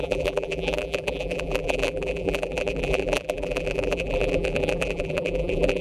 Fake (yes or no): yes